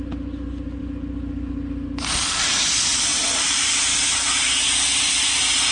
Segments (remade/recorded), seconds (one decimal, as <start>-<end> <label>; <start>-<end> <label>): 0.0-3.1 recorded; 3.1-3.7 remade; 3.7-5.7 recorded